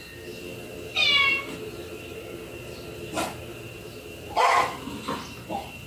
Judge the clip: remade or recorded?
recorded